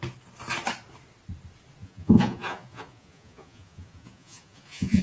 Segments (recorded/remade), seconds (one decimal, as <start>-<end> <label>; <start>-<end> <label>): 0.0-1.8 recorded; 1.8-5.0 remade